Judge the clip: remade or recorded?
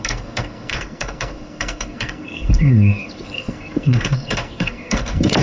remade